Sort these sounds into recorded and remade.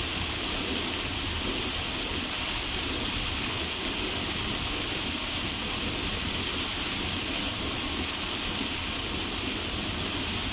recorded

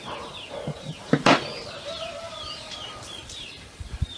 remade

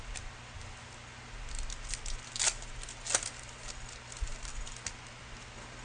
recorded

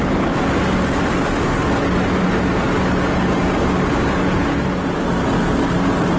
recorded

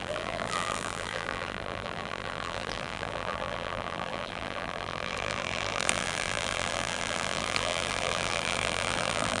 remade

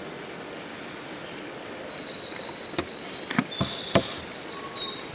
recorded